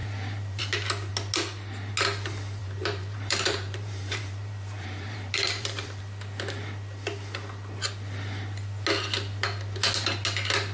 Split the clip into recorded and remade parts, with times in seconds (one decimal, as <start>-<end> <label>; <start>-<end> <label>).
0.0-0.6 remade; 0.6-2.6 recorded; 2.6-6.0 remade; 6.0-10.7 recorded